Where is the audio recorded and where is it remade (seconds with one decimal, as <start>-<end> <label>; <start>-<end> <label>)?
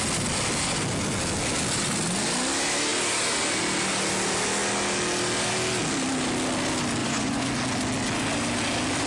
0.0-7.0 recorded; 7.0-7.5 remade; 7.5-9.1 recorded